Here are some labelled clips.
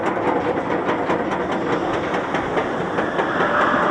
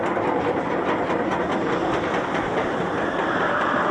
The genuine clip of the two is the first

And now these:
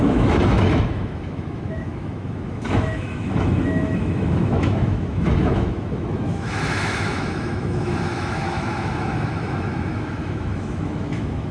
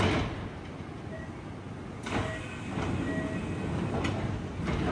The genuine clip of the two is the second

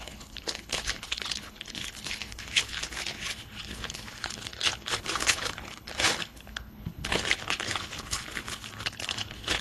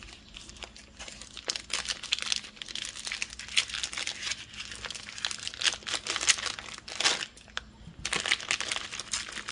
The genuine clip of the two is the second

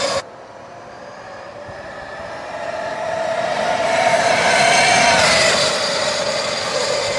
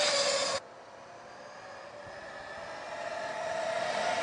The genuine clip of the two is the second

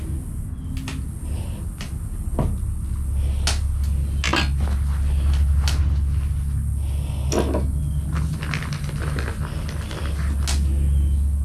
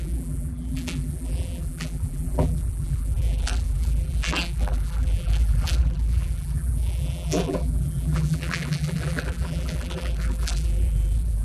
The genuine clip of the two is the first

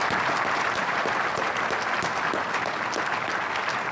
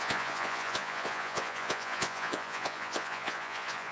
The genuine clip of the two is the first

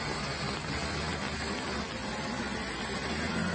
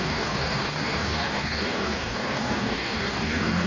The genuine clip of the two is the first